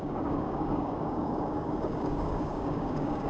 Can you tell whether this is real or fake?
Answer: fake